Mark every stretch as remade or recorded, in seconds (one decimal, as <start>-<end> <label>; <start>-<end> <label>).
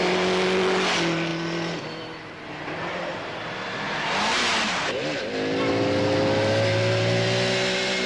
0.0-8.1 recorded